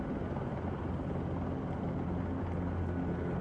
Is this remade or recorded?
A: recorded